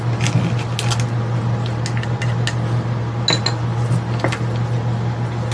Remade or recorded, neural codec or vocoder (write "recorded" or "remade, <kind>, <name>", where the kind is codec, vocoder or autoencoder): recorded